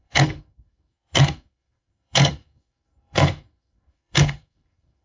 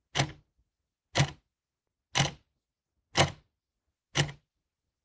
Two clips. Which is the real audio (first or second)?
second